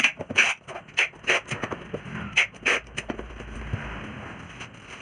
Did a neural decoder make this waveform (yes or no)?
no